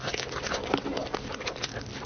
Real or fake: real